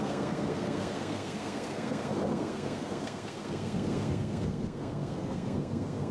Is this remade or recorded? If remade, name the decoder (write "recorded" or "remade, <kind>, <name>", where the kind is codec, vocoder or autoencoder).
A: remade, codec, SNAC